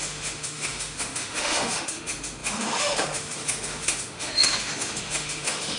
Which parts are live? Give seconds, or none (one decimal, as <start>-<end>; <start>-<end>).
none